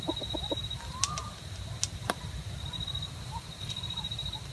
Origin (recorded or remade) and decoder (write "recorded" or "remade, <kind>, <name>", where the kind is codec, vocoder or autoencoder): recorded